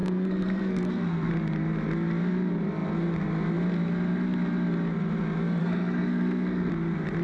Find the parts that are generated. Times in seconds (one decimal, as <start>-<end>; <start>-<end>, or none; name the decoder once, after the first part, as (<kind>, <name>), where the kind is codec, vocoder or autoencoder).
0.0-1.3 (codec, SNAC); 5.6-6.7